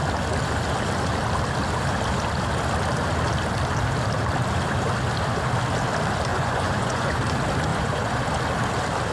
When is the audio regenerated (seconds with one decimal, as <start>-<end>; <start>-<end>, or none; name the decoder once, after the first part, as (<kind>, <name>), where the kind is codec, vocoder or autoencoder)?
6.3-7.2 (vocoder, Vocos); 7.7-8.2